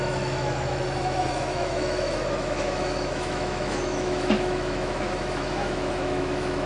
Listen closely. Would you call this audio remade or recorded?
remade